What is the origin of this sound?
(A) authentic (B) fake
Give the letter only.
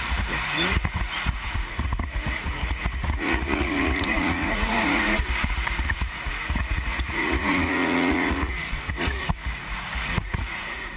B